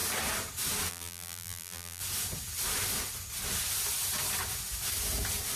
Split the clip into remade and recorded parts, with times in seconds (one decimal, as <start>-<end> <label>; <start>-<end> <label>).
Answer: 0.0-0.9 recorded; 0.9-2.0 remade; 2.0-5.6 recorded